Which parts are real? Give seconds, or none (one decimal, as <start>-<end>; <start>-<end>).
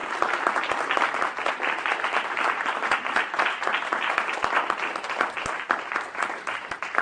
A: 0.0-7.0